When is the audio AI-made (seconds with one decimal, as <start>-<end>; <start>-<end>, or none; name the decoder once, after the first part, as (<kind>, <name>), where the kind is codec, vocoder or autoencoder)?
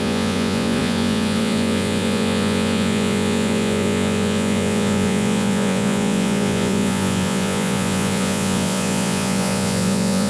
0.0-10.3 (vocoder, Vocos)